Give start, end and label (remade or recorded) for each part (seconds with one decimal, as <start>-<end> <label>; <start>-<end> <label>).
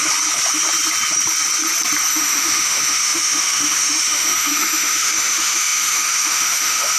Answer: 0.0-2.1 recorded; 2.1-7.0 remade